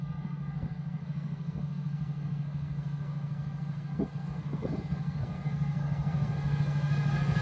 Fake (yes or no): yes